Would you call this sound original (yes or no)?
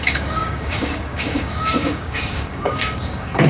no